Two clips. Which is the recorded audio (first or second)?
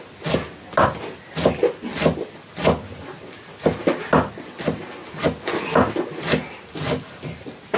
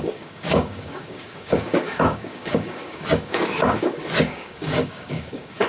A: first